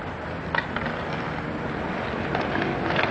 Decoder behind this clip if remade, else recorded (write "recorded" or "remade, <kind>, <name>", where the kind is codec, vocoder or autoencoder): recorded